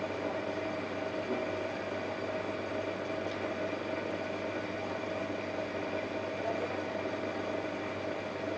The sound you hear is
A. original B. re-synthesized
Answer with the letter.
A